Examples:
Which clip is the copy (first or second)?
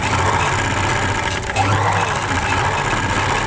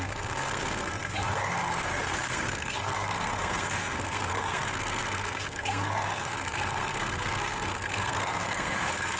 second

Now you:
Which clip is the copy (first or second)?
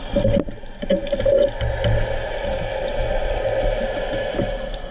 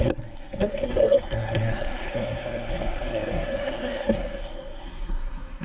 second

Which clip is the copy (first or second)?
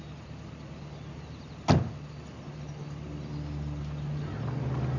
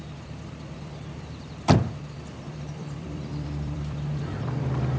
second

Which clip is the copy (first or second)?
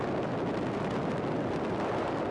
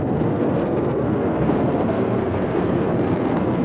second